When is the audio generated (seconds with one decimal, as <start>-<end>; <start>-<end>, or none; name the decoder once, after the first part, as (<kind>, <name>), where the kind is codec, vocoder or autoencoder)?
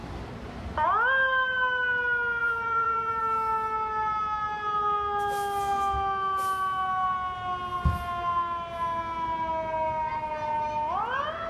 0.0-0.5 (vocoder, BigVGAN v2); 2.4-3.2